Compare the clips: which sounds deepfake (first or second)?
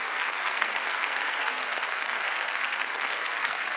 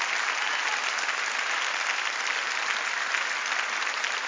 first